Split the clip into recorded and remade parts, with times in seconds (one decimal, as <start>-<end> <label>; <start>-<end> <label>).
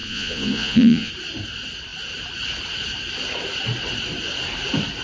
0.0-1.1 remade; 1.1-5.0 recorded